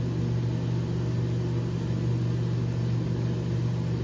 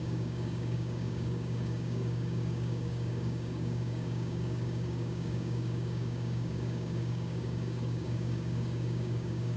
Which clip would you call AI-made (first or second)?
second